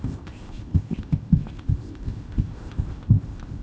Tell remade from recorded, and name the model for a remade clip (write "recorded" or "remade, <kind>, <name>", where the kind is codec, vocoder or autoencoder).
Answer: remade, codec, ZipCodec